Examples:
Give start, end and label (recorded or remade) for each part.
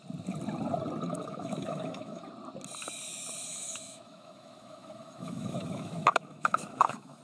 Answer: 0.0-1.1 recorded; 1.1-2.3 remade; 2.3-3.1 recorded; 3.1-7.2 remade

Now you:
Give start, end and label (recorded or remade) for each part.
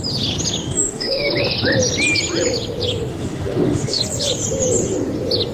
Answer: 0.0-0.6 recorded; 0.6-1.3 remade; 1.3-3.1 recorded; 3.1-4.0 remade; 4.0-5.5 recorded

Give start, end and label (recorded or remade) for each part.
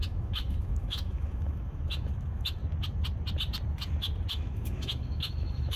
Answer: 0.0-2.6 remade; 2.6-4.3 recorded; 4.3-5.8 remade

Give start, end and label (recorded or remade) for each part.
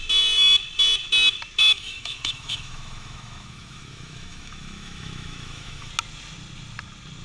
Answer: 0.0-1.6 recorded; 1.6-5.9 remade; 5.9-7.2 recorded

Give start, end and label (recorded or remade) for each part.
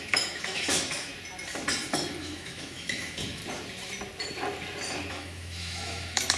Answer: 0.0-1.1 remade; 1.1-2.2 recorded; 2.2-3.4 remade; 3.4-5.1 recorded; 5.1-6.4 remade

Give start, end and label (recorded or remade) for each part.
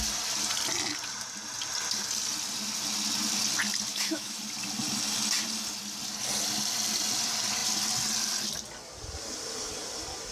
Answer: 0.0-3.9 recorded; 3.9-4.4 remade; 4.4-10.3 recorded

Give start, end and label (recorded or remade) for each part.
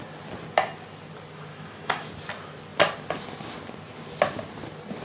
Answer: 0.0-1.5 recorded; 1.5-2.1 remade; 2.1-5.0 recorded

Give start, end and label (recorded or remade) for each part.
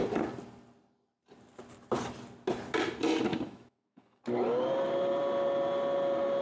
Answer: 0.0-3.3 recorded; 3.3-4.2 remade; 4.2-6.4 recorded